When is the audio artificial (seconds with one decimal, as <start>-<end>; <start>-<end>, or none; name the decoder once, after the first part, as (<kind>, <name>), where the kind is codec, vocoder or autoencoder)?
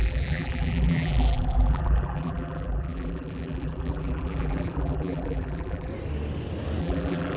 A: 0.0-5.9 (vocoder, BigVGAN v2); 6.8-7.4